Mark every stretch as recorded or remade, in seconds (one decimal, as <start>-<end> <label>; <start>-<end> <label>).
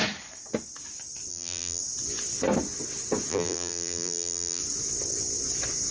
0.0-1.3 recorded; 1.3-1.8 remade; 1.8-3.3 recorded; 3.3-4.6 remade; 4.6-5.9 recorded